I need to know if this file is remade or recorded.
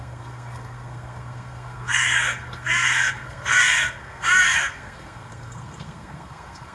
remade